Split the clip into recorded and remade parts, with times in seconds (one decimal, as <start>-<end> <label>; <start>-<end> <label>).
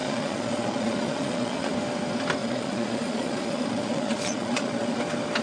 0.0-1.7 remade; 1.7-2.4 recorded; 2.4-5.0 remade; 5.0-5.4 recorded